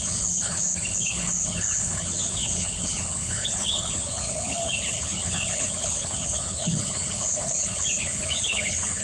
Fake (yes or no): yes